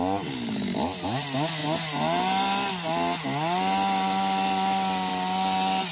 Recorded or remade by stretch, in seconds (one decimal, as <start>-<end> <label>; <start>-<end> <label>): 0.0-5.9 recorded